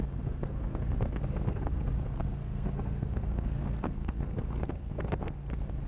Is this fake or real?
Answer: fake